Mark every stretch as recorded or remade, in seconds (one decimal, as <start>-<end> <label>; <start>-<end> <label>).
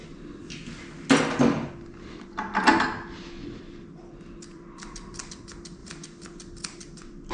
0.0-4.5 recorded; 4.5-5.2 remade; 5.2-7.3 recorded